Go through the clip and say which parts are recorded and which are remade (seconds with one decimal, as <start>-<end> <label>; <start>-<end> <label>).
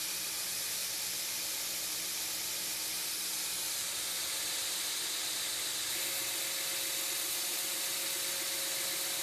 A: 0.0-9.2 recorded